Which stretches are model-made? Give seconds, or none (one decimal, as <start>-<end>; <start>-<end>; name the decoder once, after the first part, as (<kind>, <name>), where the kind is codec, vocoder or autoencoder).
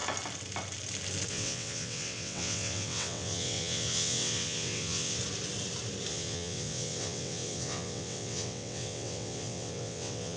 1.3-5.2 (vocoder, WaveNeXt); 6.1-10.4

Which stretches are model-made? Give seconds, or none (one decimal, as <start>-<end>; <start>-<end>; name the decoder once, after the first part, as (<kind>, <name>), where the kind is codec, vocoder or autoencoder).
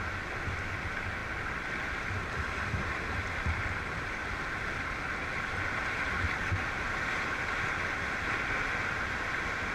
none